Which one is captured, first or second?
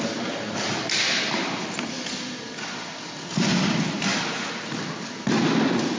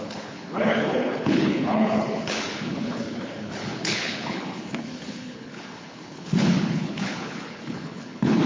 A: first